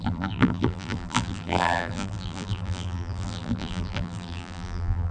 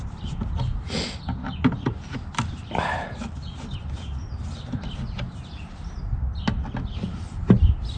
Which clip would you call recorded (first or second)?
second